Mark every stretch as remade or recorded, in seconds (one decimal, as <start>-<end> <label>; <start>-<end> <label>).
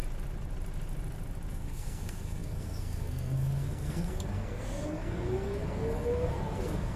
0.0-1.5 recorded; 1.5-7.0 remade